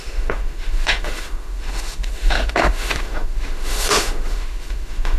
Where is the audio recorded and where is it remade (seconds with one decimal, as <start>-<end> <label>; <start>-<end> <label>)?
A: 0.0-5.2 remade